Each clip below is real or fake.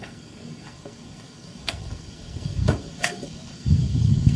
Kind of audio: fake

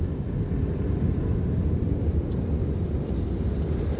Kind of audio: fake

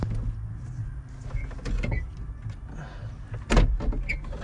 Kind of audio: real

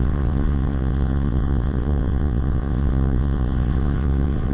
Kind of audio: fake